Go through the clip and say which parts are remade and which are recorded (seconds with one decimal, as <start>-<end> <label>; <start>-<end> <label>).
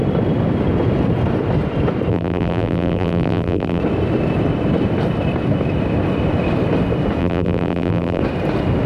0.0-2.1 recorded; 2.1-3.8 remade; 3.8-7.2 recorded; 7.2-8.2 remade; 8.2-8.9 recorded